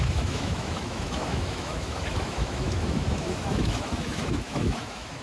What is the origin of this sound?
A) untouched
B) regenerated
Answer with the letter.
B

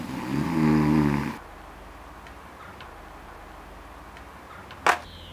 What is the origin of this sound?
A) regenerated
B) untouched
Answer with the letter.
B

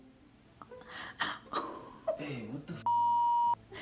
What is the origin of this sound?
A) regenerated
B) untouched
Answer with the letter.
B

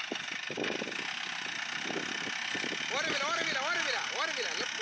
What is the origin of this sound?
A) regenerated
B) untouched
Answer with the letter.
B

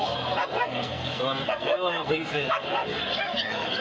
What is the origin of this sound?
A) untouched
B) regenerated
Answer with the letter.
B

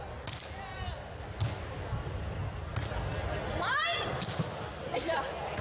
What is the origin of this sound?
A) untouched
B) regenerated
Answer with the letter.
A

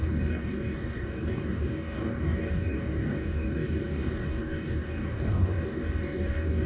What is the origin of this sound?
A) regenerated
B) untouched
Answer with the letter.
A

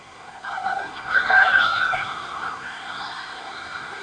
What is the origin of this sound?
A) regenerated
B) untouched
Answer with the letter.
A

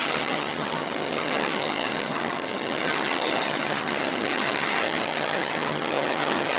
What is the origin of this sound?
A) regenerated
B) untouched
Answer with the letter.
A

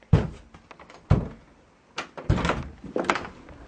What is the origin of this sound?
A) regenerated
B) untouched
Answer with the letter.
B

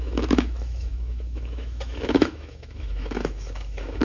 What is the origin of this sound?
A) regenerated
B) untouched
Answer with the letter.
A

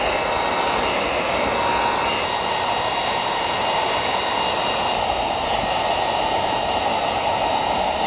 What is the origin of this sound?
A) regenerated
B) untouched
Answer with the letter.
B